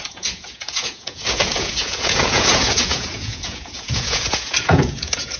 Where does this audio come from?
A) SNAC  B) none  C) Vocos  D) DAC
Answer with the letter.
C